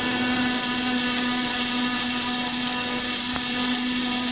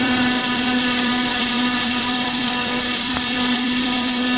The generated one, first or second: second